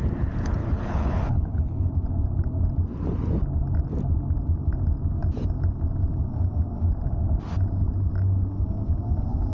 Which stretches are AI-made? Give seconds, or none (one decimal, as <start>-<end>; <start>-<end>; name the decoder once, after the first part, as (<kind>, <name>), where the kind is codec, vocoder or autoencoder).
0.6-1.9 (codec, HILCodec)